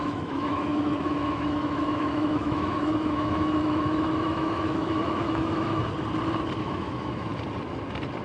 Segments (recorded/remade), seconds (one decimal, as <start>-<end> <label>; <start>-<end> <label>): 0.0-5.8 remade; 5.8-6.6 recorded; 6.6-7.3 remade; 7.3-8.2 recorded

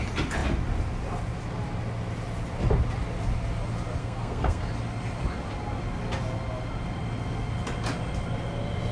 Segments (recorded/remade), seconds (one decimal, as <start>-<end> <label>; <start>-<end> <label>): 0.0-4.0 recorded; 4.0-4.7 remade; 4.7-8.9 recorded

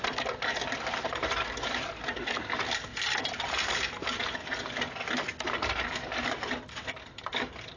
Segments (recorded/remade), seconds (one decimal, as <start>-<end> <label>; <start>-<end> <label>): 0.0-7.8 recorded

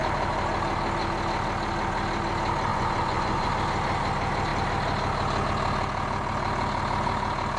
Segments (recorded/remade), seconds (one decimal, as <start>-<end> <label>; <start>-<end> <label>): 0.0-2.7 recorded; 2.7-3.5 remade; 3.5-7.6 recorded

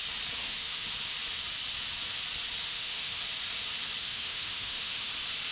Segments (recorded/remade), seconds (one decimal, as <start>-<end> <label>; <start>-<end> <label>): 0.0-0.4 recorded; 0.4-0.9 remade; 0.9-2.6 recorded; 2.6-3.2 remade; 3.2-4.0 recorded; 4.0-5.1 remade; 5.1-5.5 recorded